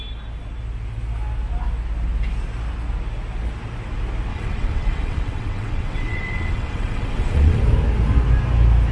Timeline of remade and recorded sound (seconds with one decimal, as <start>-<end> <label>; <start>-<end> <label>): 0.0-4.3 recorded; 4.3-7.6 remade; 7.6-8.9 recorded